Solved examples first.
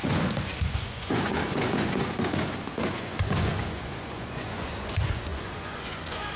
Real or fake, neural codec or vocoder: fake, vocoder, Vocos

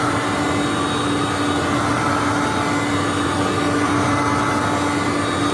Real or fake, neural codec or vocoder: real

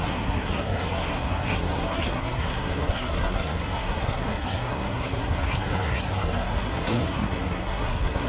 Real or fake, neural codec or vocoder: fake, codec, SNAC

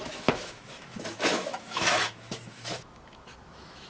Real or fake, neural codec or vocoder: fake, autoencoder, DAC-VAE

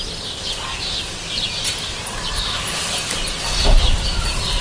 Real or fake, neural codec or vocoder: fake, vocoder, BigVGAN v2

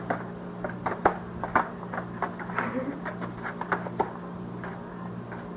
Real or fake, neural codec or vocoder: real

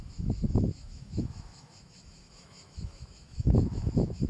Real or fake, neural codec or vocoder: fake, autoencoder, DAC-VAE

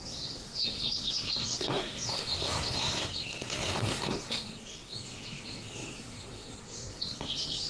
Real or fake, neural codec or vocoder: fake, codec, SNAC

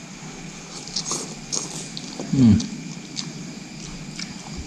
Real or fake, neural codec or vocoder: real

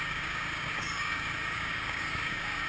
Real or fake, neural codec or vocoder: fake, codec, DAC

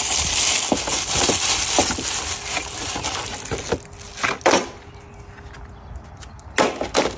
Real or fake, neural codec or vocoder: real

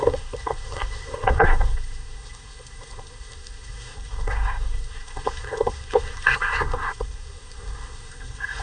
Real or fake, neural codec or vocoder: fake, codec, SNAC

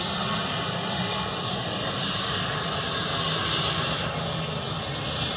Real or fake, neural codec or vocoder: real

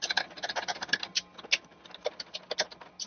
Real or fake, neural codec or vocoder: real